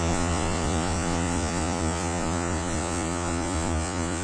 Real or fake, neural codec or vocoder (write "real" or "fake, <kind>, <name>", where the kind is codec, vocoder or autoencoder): fake, vocoder, Vocos